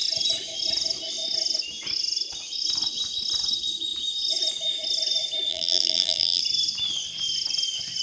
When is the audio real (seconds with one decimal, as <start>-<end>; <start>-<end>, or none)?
0.0-5.5; 6.4-8.0